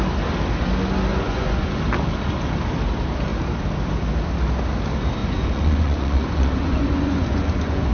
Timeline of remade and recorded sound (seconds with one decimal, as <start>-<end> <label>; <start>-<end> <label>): 0.0-1.1 recorded; 1.1-1.8 remade; 1.8-5.2 recorded; 5.2-7.9 remade